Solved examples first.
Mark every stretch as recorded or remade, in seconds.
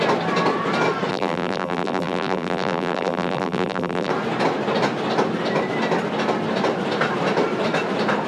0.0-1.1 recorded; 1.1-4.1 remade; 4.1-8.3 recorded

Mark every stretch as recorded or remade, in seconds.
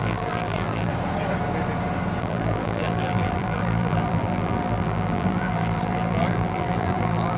0.0-0.9 remade; 0.9-2.2 recorded; 2.2-7.4 remade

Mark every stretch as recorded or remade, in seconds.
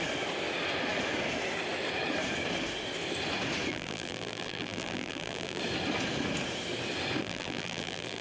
0.0-3.7 recorded; 3.7-5.6 remade; 5.6-7.2 recorded; 7.2-8.2 remade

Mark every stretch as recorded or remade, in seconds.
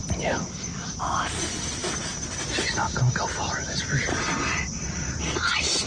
0.0-5.9 recorded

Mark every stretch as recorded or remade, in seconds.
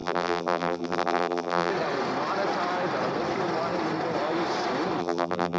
0.0-1.7 remade; 1.7-5.0 recorded; 5.0-5.6 remade